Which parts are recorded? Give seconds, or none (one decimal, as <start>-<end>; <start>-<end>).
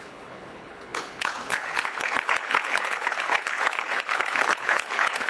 none